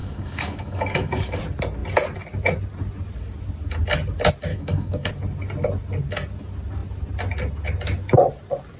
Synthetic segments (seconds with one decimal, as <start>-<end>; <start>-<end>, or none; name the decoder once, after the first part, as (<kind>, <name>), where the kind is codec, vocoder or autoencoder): 0.0-1.4 (codec, DAC); 4.5-5.1